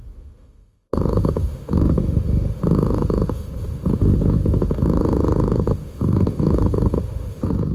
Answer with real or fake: fake